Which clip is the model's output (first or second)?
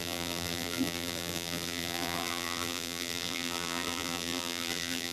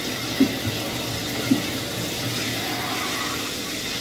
first